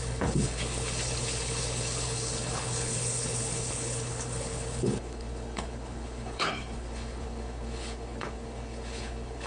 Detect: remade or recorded remade